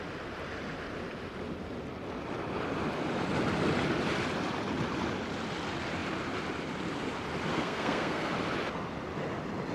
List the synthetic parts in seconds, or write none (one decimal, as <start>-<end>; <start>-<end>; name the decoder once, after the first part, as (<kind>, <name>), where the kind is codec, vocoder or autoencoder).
7.5-8.3 (codec, SNAC)